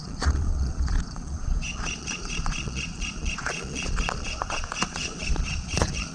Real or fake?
fake